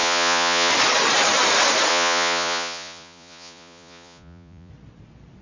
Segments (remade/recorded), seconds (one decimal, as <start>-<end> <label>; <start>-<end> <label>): 0.0-0.7 remade; 0.7-1.9 recorded; 1.9-4.7 remade; 4.7-5.4 recorded